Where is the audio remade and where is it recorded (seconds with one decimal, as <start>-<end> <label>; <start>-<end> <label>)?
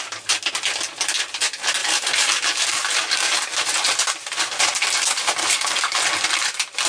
0.0-1.8 recorded; 1.8-3.4 remade; 3.4-5.4 recorded; 5.4-6.0 remade; 6.0-6.9 recorded